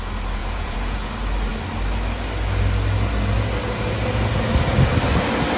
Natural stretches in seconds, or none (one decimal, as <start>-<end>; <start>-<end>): 0.0-0.4; 1.1-5.6